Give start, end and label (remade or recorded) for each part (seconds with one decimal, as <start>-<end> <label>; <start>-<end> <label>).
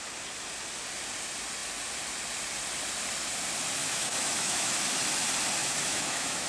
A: 0.0-3.8 recorded; 3.8-4.8 remade; 4.8-5.6 recorded; 5.6-6.5 remade